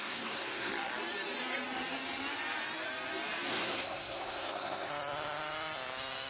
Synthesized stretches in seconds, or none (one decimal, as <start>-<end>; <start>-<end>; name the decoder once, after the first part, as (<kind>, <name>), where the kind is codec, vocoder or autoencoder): 0.0-0.7 (codec, SNAC); 3.5-4.9